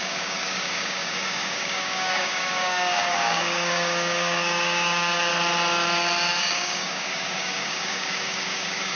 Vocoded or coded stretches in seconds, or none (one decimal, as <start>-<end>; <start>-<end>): 0.0-5.3; 6.4-9.0